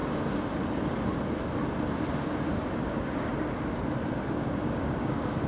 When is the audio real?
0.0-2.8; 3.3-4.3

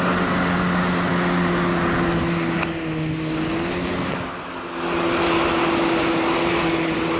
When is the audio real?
0.0-5.6; 6.2-7.2

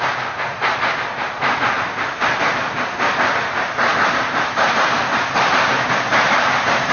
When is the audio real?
0.0-6.9

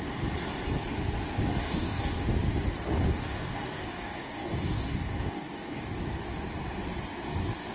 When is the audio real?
0.0-1.5; 2.1-2.9; 5.9-7.7

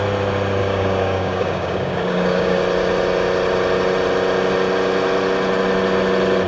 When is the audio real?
0.0-0.6; 2.6-6.5

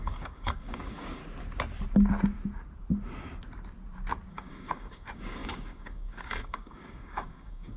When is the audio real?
1.2-4.3

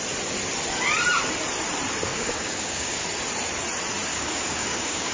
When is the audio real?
0.0-2.1; 3.0-4.1